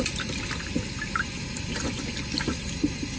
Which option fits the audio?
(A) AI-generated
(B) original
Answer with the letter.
B